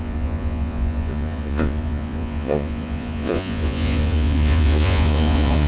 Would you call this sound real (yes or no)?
no